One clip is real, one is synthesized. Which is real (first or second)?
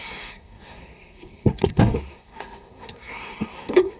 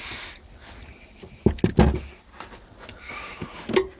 second